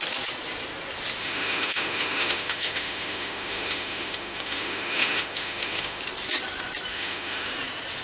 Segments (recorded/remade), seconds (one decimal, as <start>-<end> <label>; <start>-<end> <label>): 0.0-1.2 recorded; 1.2-6.0 remade; 6.0-6.9 recorded; 6.9-7.5 remade; 7.5-8.0 recorded